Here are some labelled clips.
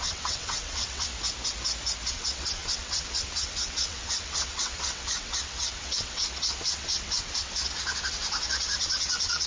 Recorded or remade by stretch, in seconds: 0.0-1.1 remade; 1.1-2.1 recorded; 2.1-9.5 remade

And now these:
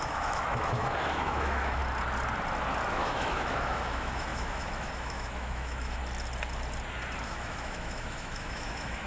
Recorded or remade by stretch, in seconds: 0.0-1.8 remade; 1.8-2.9 recorded; 2.9-6.0 remade; 6.0-7.2 recorded; 7.2-9.1 remade

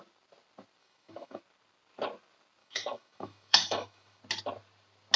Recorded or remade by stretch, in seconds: 0.0-0.8 recorded; 0.8-1.4 remade; 1.4-2.6 recorded; 2.6-4.2 remade; 4.2-5.2 recorded

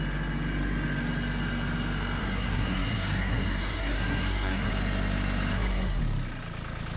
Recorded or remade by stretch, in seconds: 0.0-2.2 recorded; 2.2-4.7 remade; 4.7-5.5 recorded; 5.5-6.0 remade; 6.0-7.0 recorded

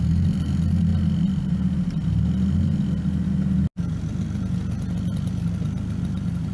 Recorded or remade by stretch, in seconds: 0.0-6.5 recorded

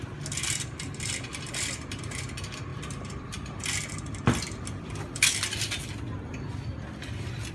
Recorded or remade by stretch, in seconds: 0.0-1.3 recorded; 1.3-2.2 remade; 2.2-2.7 recorded; 2.7-7.5 remade